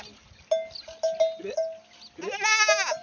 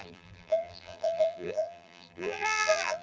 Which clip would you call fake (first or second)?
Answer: second